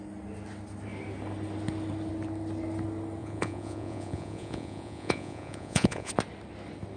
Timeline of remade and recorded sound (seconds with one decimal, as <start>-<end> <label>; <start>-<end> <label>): 0.0-3.2 recorded; 3.2-6.1 remade; 6.1-7.0 recorded